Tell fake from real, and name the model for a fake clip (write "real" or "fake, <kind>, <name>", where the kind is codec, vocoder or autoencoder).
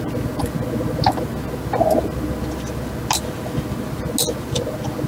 real